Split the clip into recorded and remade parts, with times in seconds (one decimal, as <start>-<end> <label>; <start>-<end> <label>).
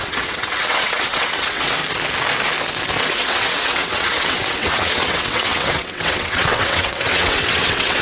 0.0-1.8 remade; 1.8-3.0 recorded; 3.0-8.0 remade